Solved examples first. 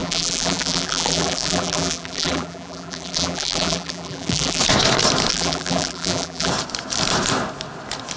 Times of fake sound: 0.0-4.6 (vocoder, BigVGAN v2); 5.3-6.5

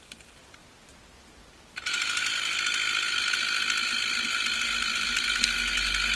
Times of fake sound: none